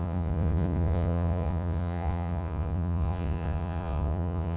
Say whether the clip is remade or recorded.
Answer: remade